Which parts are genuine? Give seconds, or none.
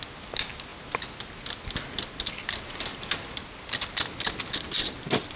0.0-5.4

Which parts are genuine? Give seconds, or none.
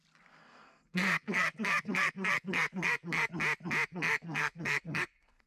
0.0-0.4; 3.3-3.9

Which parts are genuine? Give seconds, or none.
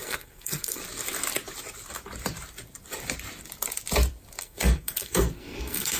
0.8-4.4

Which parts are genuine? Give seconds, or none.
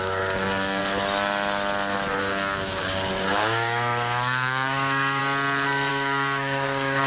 0.8-2.2; 5.2-5.9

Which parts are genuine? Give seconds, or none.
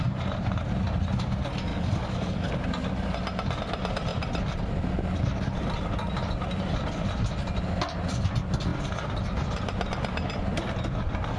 0.0-1.7; 2.5-11.4